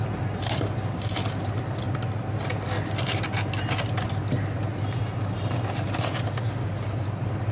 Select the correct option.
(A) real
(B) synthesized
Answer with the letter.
A